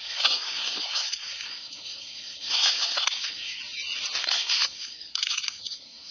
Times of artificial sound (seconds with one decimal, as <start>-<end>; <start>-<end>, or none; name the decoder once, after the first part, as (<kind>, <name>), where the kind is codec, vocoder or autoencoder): 0.0-3.6 (codec, SNAC); 4.2-6.1